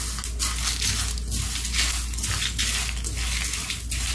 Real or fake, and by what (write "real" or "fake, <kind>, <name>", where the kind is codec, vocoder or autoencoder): real